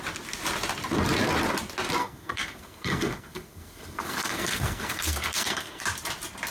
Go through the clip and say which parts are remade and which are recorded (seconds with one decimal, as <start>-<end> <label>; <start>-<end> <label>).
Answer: 0.0-2.0 recorded; 2.0-5.8 remade; 5.8-6.5 recorded